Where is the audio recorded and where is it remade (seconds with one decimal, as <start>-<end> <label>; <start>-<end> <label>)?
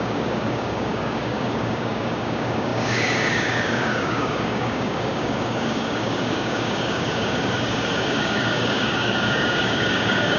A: 0.0-10.4 remade